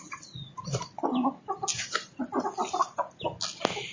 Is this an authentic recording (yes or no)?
yes